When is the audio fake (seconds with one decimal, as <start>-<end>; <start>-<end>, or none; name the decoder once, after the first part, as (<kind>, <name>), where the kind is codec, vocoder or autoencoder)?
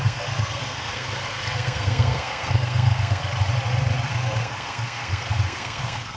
0.0-3.2 (codec, SNAC); 4.1-6.2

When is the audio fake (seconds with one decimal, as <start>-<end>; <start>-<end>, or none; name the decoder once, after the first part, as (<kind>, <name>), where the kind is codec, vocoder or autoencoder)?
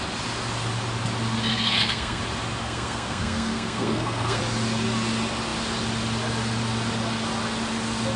1.5-2.2 (codec, SNAC); 2.6-4.4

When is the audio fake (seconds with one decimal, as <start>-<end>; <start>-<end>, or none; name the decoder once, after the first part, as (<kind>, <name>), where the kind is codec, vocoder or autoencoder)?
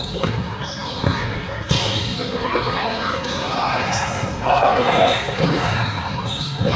0.0-6.8 (codec, SNAC)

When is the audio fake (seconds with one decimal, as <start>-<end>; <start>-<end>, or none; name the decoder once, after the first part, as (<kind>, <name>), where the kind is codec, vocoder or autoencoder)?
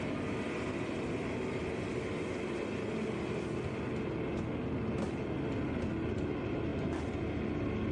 none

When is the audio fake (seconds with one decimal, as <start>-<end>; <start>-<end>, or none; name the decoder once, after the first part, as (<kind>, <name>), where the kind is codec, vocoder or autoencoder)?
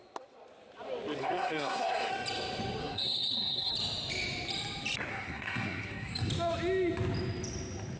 1.2-2.1 (codec, SNAC); 2.8-3.7; 5.1-6.3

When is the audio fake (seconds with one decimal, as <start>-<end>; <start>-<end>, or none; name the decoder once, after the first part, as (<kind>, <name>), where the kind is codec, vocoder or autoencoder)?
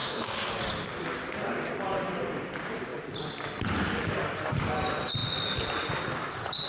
0.0-0.5 (codec, SNAC)